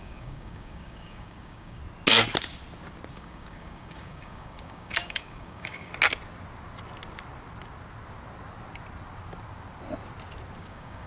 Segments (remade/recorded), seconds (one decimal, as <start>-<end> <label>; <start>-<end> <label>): 0.0-1.8 remade; 1.8-3.1 recorded; 3.1-5.9 remade; 5.9-10.6 recorded; 10.6-11.1 remade